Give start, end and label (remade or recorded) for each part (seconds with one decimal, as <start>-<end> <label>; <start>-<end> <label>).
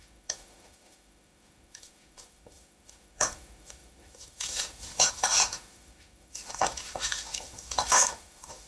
0.0-8.7 remade